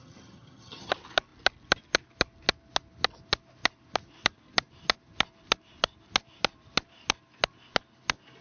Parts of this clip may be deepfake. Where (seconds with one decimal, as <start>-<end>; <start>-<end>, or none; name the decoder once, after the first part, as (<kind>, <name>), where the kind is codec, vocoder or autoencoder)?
0.0-0.9 (vocoder, HiFi-GAN)